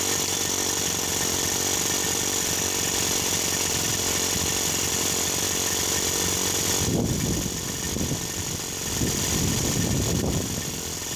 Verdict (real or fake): real